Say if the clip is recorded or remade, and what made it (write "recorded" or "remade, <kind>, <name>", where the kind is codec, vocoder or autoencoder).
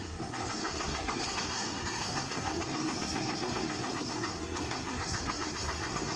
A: remade, codec, SNAC